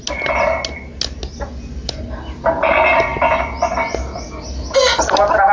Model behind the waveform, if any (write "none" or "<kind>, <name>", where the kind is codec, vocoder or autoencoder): none